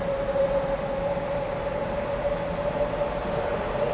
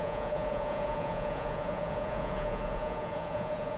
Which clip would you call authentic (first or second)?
first